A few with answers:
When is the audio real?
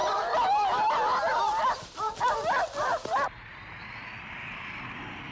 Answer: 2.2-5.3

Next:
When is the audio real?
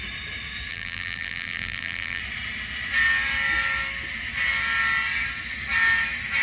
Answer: 0.0-0.7; 2.2-6.4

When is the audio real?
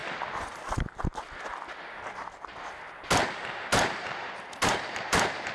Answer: 0.0-3.7